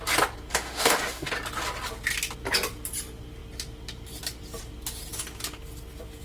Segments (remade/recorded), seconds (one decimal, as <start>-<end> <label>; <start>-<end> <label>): 0.0-0.5 recorded; 0.5-1.3 remade; 1.3-6.2 recorded